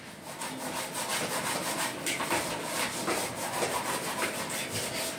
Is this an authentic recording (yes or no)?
yes